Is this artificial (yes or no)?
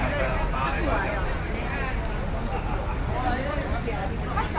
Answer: no